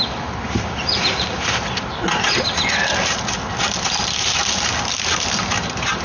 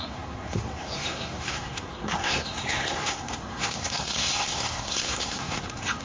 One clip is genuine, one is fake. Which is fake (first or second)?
second